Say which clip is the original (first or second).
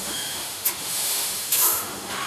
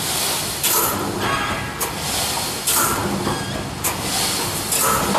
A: second